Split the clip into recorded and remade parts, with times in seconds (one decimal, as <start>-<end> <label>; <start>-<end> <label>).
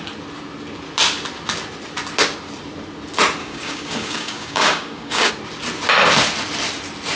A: 0.0-3.4 recorded; 3.4-5.3 remade; 5.3-7.2 recorded